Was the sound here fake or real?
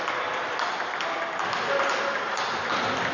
real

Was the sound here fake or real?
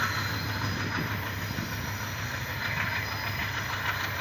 real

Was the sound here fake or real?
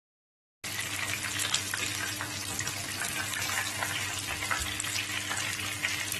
real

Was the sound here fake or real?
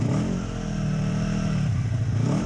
fake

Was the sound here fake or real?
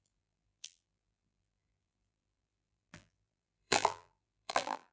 fake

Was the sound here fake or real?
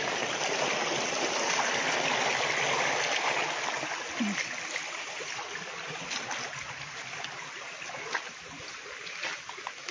real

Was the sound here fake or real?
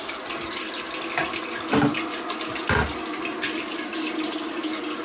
real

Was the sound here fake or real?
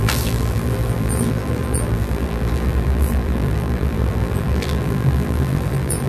fake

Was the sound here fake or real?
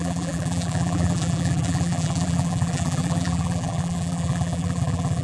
fake